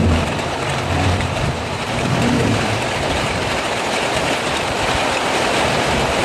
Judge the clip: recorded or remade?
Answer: remade